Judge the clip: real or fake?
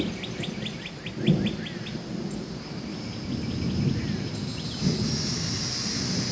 real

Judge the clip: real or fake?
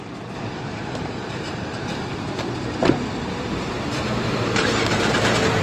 fake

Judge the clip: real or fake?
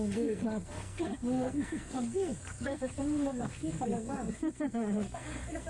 fake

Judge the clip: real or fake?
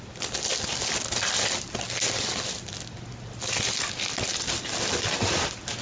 real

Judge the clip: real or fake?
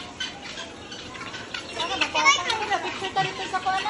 real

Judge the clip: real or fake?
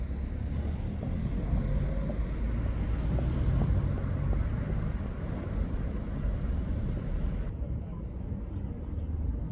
real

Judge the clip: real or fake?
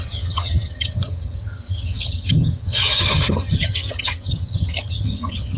fake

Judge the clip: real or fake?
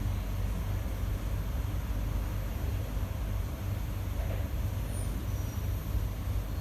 real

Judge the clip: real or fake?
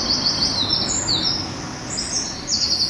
real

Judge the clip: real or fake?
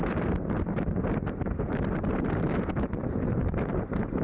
fake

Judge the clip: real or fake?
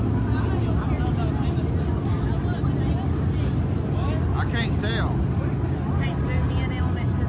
real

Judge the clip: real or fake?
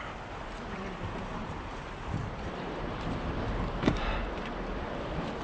fake